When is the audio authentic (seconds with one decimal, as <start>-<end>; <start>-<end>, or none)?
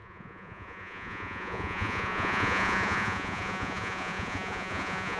none